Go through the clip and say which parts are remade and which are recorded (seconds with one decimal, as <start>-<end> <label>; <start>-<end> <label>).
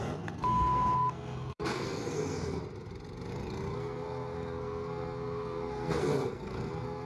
0.0-2.6 remade; 2.6-3.3 recorded; 3.3-7.1 remade